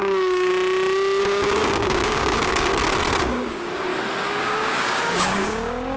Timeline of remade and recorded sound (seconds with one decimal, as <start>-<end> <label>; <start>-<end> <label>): 0.0-0.5 remade; 0.5-1.2 recorded; 1.2-2.7 remade; 2.7-3.2 recorded; 3.2-3.9 remade; 3.9-4.4 recorded; 4.4-6.0 remade